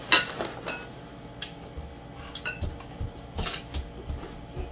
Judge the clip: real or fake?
real